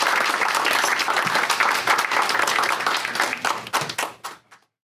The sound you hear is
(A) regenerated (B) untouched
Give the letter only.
B